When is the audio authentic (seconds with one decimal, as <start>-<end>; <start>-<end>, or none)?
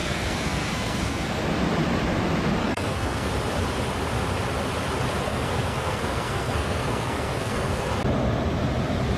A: 1.4-2.6; 3.3-5.3; 7.9-9.2